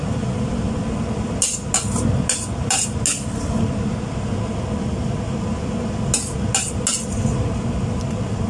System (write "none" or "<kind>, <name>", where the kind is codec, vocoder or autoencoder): none